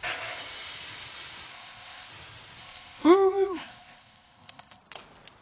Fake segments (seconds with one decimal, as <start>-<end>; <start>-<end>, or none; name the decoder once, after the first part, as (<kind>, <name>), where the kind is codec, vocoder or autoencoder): 1.5-2.1 (codec, ZipCodec); 2.6-4.8